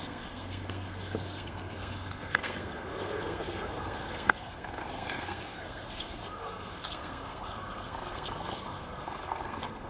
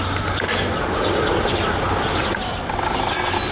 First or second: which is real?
second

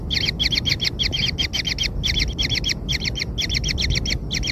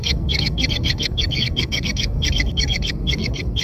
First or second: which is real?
first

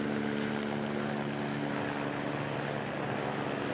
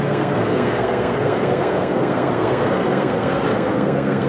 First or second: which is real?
first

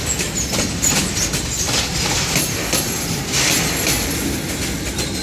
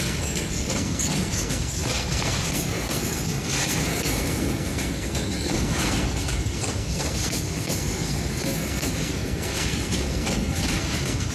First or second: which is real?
first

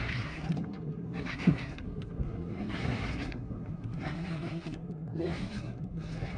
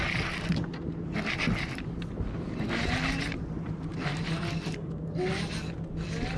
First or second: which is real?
second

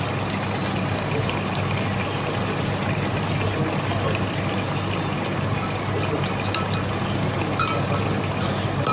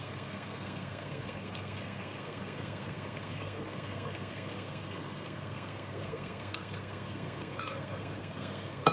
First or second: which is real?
first